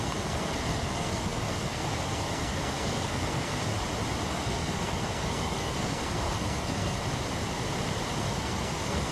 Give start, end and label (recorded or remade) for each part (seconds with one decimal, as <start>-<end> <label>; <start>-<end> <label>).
0.0-3.7 remade; 3.7-4.3 recorded; 4.3-7.0 remade; 7.0-8.2 recorded; 8.2-9.1 remade